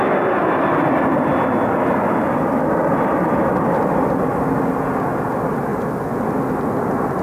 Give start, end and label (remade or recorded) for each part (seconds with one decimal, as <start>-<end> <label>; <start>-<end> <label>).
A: 0.0-7.2 recorded

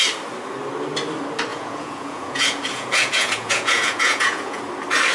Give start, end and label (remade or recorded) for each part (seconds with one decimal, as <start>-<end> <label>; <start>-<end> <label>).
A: 0.0-1.5 recorded; 1.5-4.6 remade; 4.6-5.1 recorded

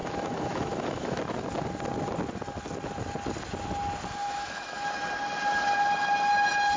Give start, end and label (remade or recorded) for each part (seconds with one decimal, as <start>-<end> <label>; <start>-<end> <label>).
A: 0.0-1.2 remade; 1.2-4.2 recorded; 4.2-4.9 remade; 4.9-6.8 recorded